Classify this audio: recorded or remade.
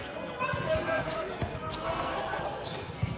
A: remade